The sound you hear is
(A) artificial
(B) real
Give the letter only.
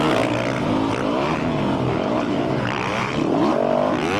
B